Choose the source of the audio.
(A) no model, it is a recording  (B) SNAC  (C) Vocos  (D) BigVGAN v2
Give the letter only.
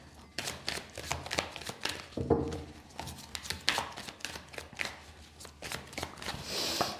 A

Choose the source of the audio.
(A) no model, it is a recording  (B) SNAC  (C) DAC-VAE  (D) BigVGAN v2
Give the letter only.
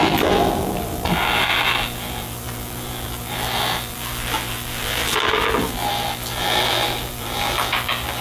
D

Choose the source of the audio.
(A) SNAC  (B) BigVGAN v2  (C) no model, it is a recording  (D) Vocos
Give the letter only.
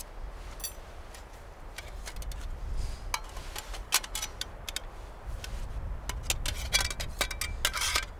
C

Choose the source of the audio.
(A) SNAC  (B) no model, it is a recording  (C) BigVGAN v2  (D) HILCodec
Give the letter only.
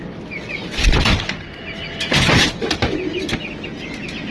B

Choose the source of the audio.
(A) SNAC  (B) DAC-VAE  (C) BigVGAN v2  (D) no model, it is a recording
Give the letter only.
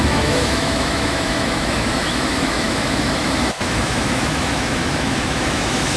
B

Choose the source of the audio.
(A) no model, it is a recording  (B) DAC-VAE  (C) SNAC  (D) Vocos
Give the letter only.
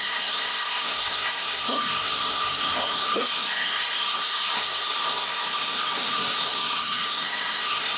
C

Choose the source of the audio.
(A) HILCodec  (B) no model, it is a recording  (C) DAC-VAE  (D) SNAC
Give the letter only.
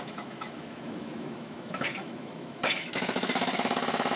C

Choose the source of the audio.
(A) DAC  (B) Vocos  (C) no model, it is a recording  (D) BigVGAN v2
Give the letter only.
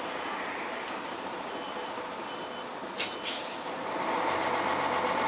C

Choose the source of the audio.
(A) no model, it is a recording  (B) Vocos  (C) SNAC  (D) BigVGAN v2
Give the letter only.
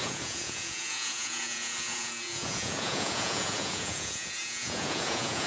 B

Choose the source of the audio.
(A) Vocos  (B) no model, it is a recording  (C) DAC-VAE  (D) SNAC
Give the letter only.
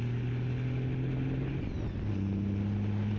B